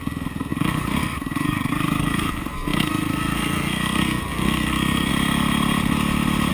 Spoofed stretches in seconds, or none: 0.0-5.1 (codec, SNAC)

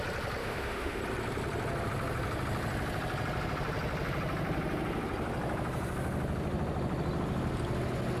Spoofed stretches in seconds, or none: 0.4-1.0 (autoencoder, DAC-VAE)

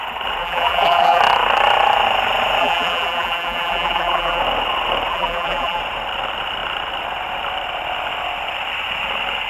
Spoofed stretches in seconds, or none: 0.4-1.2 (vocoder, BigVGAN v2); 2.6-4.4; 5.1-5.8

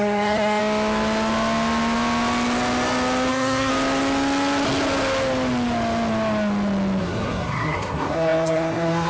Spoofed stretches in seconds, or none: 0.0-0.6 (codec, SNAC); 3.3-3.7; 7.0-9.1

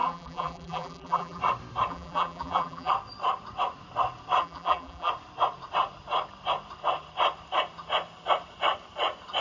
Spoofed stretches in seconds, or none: 0.0-1.4 (vocoder, BigVGAN v2); 1.9-2.9; 4.4-5.1

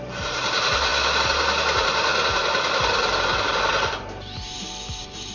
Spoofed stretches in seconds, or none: 0.0-0.9 (vocoder, BigVGAN v2); 1.6-2.1; 2.8-5.3

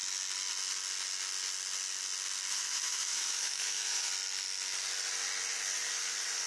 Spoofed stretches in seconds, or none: 2.5-4.1 (autoencoder, DAC-VAE)